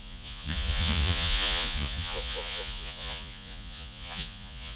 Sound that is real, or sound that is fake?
fake